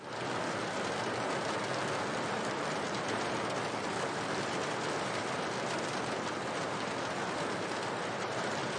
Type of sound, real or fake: real